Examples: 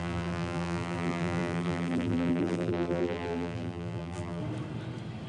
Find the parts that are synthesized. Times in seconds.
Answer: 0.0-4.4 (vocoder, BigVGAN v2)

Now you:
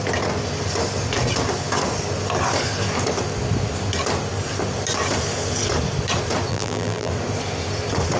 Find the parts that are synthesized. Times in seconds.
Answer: 6.5-7.1 (vocoder, BigVGAN v2)

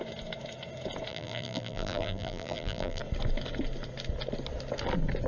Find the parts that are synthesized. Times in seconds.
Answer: 1.1-3.0 (vocoder, BigVGAN v2)